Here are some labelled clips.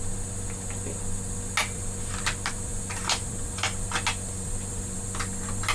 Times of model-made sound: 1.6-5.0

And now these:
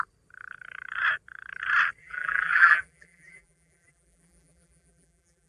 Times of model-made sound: 2.0-5.5

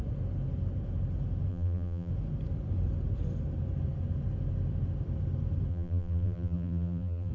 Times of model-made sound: 1.5-2.1; 5.7-7.3